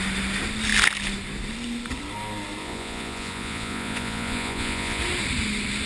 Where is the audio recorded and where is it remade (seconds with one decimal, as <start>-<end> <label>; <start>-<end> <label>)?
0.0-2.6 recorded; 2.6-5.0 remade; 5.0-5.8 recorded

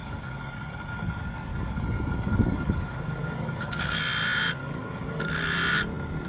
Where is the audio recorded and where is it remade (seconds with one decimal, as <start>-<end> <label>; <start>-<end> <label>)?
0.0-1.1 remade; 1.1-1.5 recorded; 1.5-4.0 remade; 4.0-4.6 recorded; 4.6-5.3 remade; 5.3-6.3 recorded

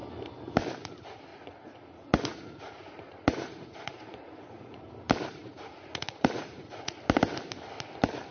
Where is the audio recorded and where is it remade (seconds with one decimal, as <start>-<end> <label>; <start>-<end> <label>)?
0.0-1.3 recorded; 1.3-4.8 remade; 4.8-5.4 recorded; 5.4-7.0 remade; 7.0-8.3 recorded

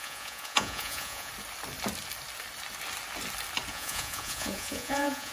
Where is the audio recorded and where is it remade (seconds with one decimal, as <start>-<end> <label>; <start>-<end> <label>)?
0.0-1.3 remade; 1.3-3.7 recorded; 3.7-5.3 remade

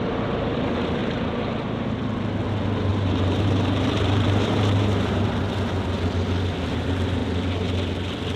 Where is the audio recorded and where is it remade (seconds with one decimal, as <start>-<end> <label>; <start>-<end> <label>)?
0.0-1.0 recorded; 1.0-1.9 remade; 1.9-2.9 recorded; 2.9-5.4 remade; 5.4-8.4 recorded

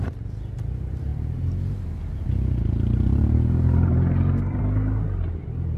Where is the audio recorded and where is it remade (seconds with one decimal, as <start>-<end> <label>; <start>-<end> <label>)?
0.0-1.1 recorded; 1.1-4.6 remade; 4.6-5.8 recorded

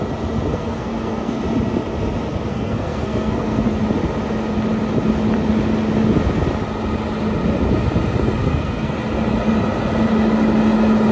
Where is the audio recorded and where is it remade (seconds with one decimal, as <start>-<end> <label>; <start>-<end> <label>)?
0.0-0.5 recorded; 0.5-1.4 remade; 1.4-2.5 recorded; 2.5-3.8 remade; 3.8-8.4 recorded; 8.4-8.9 remade; 8.9-11.1 recorded

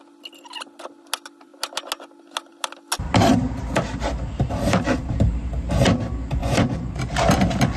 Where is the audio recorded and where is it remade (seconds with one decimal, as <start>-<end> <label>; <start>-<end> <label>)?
0.0-6.4 recorded; 6.4-7.0 remade; 7.0-7.8 recorded